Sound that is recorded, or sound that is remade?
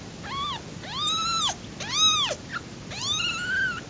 recorded